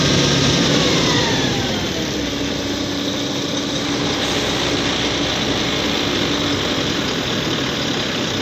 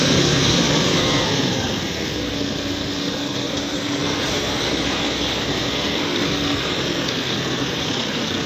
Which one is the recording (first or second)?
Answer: first